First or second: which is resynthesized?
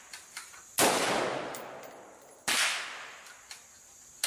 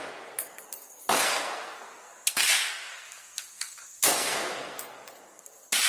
second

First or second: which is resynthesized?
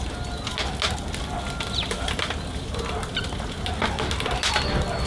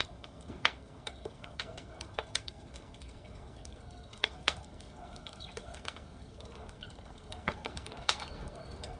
second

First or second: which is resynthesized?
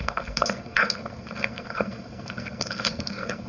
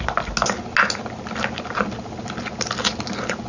first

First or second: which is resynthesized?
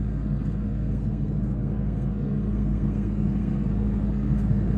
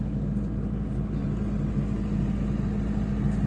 first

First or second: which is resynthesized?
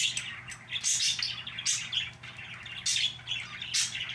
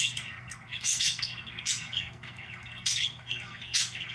second